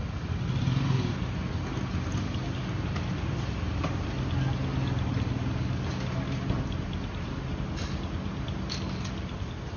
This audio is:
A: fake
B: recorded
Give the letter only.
B